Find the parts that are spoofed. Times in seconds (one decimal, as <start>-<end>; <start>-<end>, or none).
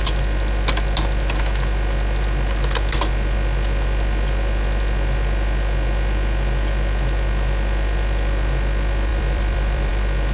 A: 9.1-9.9